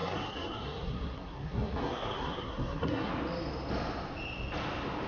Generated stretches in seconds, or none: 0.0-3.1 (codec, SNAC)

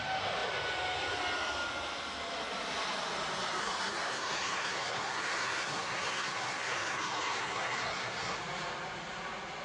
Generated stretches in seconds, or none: 3.6-8.4 (codec, SNAC)

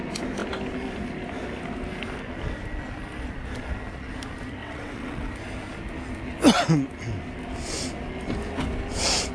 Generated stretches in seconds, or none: 4.6-5.3 (vocoder, WaveNeXt)

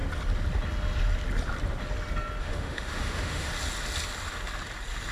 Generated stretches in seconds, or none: 2.4-3.5 (autoencoder, DAC-VAE)

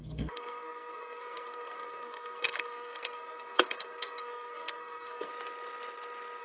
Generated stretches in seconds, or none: 0.0-5.3 (codec, SNAC)

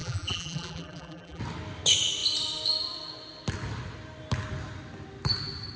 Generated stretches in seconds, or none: 0.0-1.4 (vocoder, BigVGAN v2)

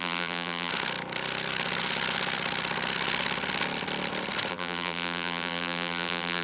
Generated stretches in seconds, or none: 0.0-0.7 (vocoder, BigVGAN v2); 4.5-6.4